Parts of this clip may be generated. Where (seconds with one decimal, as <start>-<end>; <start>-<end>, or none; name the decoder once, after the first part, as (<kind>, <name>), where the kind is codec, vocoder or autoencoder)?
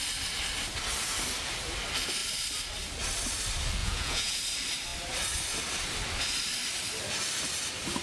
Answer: 3.8-4.4 (vocoder, Vocos)